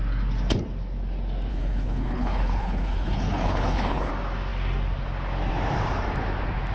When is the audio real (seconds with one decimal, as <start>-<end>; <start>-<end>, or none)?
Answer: 0.0-1.5; 4.1-6.7